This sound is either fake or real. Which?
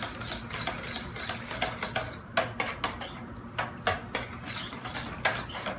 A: real